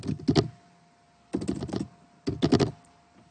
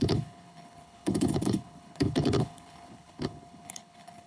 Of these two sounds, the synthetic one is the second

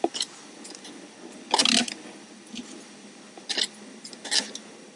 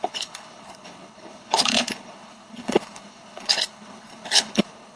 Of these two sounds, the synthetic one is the second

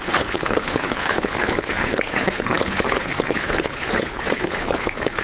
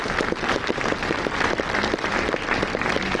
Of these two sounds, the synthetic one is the first